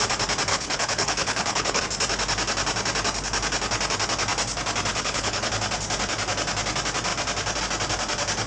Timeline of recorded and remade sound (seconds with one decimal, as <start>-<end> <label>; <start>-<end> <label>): 0.0-0.5 recorded; 0.5-1.8 remade; 1.8-4.9 recorded; 4.9-5.5 remade; 5.5-8.5 recorded